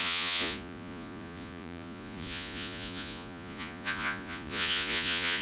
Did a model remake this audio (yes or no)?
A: yes